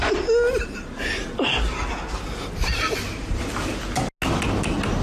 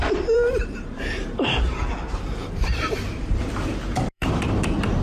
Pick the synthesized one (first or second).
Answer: second